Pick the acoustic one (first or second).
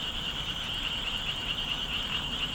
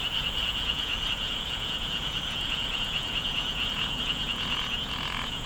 first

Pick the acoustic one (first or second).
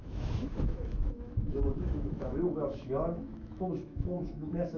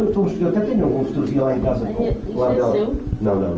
second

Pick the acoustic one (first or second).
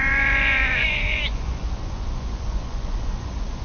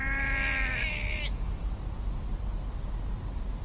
second